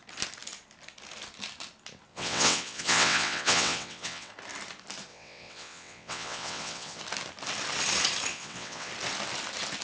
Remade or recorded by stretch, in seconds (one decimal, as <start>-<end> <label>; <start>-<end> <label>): 0.0-2.1 recorded; 2.1-4.3 remade; 4.3-5.1 recorded; 5.1-7.0 remade; 7.0-8.3 recorded; 8.3-8.9 remade; 8.9-9.8 recorded